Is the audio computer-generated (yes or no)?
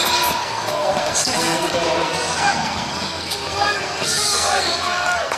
yes